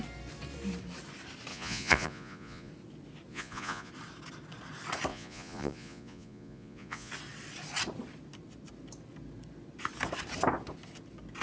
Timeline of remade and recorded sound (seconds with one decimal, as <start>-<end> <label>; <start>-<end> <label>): 0.0-1.5 recorded; 1.5-2.7 remade; 2.7-3.3 recorded; 3.3-3.9 remade; 3.9-5.1 recorded; 5.1-7.1 remade; 7.1-11.4 recorded